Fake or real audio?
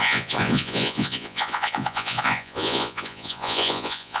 fake